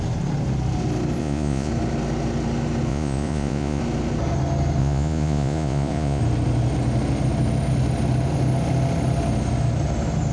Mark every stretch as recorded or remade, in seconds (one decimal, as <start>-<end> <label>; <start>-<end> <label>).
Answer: 0.0-1.2 recorded; 1.2-1.7 remade; 1.7-2.9 recorded; 2.9-3.8 remade; 3.8-4.8 recorded; 4.8-6.2 remade; 6.2-10.3 recorded